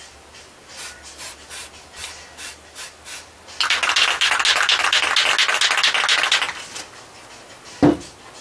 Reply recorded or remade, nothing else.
recorded